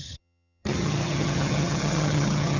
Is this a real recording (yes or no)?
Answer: no